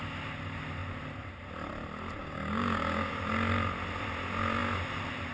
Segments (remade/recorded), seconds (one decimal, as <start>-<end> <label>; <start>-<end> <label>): 0.0-2.2 recorded; 2.2-3.2 remade; 3.2-5.3 recorded